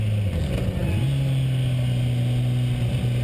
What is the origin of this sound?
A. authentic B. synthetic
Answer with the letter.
A